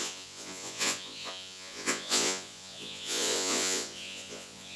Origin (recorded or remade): remade